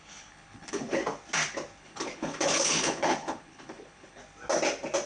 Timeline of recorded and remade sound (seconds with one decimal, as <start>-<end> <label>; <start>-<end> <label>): 0.0-1.0 remade; 1.0-1.8 recorded; 1.8-4.2 remade; 4.2-5.1 recorded